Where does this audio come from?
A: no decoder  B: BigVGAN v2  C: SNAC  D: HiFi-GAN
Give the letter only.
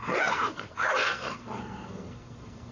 C